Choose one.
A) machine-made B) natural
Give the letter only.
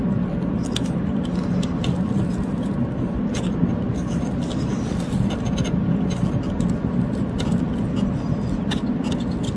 B